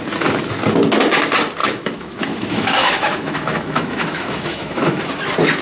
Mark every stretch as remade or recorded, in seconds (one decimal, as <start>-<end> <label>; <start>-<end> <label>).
0.0-1.6 recorded; 1.6-5.0 remade; 5.0-5.6 recorded